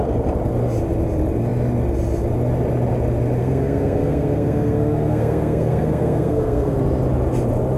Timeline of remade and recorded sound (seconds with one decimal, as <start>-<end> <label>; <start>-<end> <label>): 0.0-3.4 recorded; 3.4-6.8 remade; 6.8-7.8 recorded